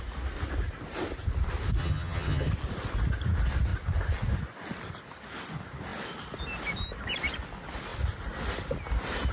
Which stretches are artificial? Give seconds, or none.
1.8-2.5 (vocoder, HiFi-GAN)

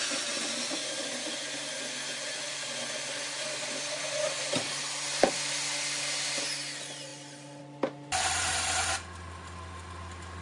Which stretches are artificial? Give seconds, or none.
none

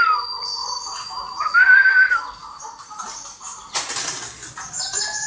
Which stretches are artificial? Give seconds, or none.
0.6-1.4 (vocoder, BigVGAN v2); 2.4-3.0

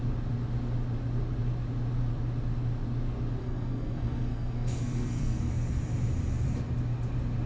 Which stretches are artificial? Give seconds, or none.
3.4-5.5 (codec, SNAC)

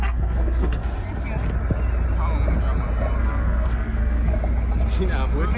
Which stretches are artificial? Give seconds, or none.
0.0-0.8 (codec, SNAC); 3.2-4.4